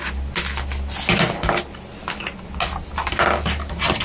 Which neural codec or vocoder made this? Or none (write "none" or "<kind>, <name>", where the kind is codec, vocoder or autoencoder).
none